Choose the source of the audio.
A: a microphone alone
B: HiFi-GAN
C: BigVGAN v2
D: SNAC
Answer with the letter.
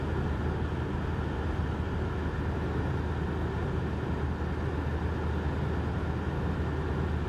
A